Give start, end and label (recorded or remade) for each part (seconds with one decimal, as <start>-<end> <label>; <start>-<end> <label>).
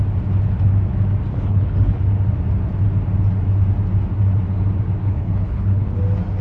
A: 0.0-1.3 recorded; 1.3-2.0 remade; 2.0-5.0 recorded; 5.0-6.0 remade; 6.0-6.4 recorded